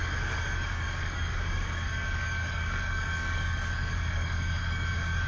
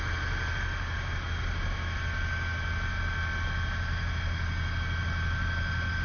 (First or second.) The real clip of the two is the second